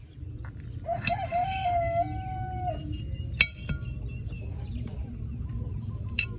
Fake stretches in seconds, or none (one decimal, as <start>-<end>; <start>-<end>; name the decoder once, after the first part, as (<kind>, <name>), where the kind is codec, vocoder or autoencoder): 0.0-0.4 (vocoder, BigVGAN v2); 4.2-6.4